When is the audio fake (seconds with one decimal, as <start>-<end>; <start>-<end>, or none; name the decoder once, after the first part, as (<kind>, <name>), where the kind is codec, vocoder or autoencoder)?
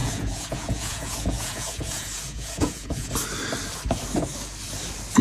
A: 0.0-3.1 (vocoder, Vocos)